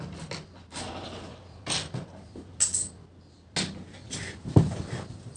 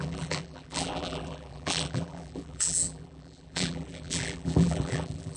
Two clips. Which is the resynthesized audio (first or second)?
second